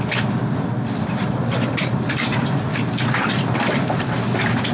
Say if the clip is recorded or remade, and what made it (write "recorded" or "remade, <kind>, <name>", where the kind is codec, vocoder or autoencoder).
recorded